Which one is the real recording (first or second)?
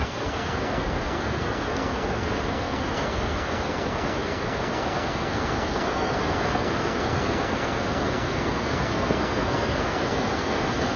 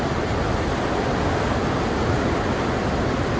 second